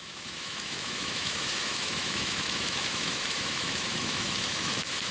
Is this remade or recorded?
remade